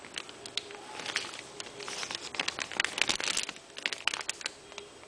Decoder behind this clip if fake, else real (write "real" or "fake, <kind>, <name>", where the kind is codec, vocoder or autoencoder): real